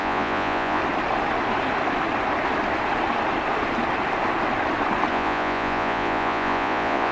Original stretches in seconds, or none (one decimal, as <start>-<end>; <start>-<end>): 0.8-5.1